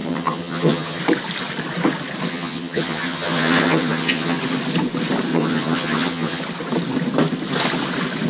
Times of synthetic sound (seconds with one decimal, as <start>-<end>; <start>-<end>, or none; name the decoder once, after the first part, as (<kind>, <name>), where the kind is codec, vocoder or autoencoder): 0.0-1.0 (vocoder, HiFi-GAN); 2.3-4.4; 5.3-6.4